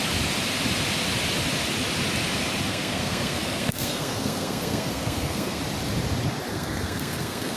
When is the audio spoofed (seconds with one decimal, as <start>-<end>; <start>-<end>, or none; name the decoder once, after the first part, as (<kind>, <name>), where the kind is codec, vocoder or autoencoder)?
2.7-5.6 (codec, SNAC); 6.5-7.6